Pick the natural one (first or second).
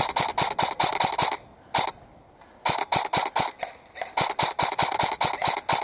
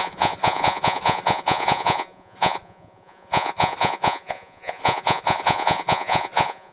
first